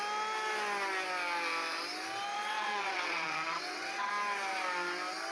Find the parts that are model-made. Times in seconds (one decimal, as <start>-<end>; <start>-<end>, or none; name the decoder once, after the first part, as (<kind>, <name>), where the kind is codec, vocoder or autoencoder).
2.3-4.1 (vocoder, WaveNeXt)

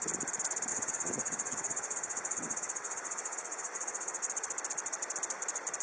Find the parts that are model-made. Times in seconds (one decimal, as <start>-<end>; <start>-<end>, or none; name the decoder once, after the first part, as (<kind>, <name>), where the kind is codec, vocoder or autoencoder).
0.7-4.2 (vocoder, WaveNeXt)

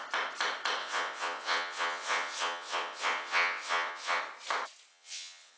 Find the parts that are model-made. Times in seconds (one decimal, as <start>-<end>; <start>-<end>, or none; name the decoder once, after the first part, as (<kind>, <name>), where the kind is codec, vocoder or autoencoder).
0.8-4.2 (vocoder, WaveNeXt); 4.9-5.6

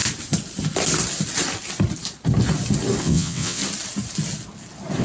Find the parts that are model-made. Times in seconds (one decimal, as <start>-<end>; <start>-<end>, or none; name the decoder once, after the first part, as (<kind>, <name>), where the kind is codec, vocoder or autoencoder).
3.0-3.6 (vocoder, WaveNeXt)

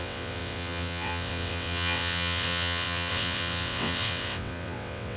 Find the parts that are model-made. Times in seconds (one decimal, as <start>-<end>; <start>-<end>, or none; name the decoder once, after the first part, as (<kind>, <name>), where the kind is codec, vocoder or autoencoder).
0.0-5.2 (vocoder, WaveNeXt)